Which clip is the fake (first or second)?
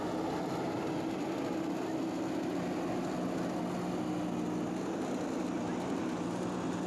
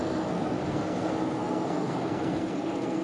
second